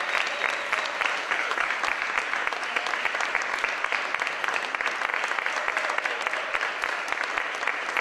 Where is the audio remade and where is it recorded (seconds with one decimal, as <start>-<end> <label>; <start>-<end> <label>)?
0.0-1.2 recorded; 1.2-1.7 remade; 1.7-8.0 recorded